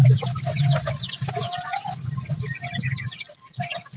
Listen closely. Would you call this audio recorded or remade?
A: recorded